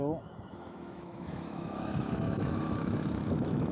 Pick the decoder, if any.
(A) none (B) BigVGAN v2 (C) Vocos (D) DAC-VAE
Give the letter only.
D